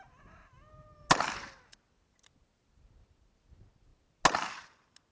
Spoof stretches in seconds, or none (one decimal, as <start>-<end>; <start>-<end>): none